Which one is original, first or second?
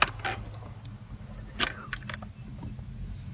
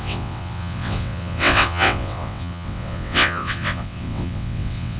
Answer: first